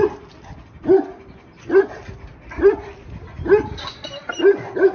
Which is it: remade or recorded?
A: recorded